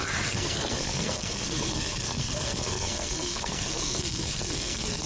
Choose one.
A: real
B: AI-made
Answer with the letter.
B